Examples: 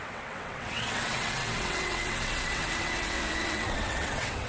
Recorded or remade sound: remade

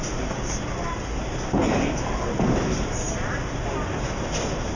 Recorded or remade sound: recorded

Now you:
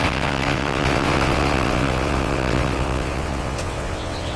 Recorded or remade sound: remade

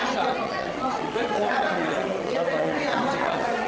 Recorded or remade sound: remade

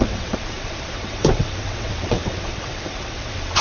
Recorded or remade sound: remade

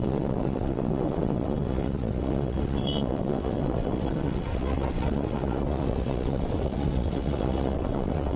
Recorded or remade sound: remade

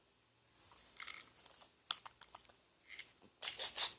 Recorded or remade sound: recorded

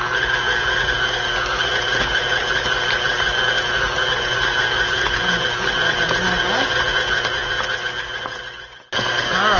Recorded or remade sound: recorded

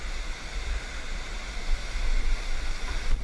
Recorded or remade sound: recorded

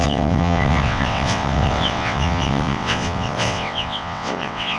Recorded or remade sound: remade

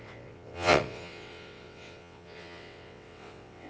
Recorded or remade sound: remade